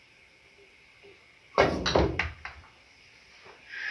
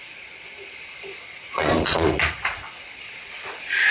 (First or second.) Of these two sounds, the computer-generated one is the second